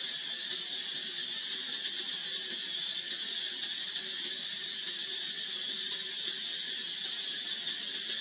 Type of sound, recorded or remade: recorded